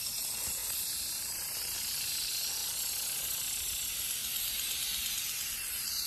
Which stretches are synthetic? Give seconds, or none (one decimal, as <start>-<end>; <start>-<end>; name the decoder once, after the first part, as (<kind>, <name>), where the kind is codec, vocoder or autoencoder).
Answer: none